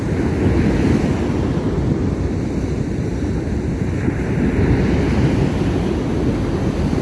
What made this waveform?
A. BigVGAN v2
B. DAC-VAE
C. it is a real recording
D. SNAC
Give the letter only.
C